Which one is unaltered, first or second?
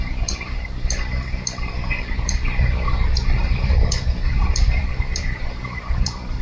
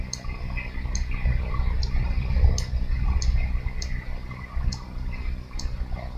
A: second